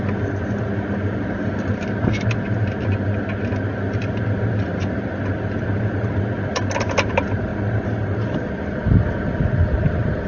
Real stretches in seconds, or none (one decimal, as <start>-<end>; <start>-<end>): 0.0-10.3